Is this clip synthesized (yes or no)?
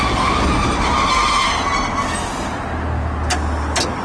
no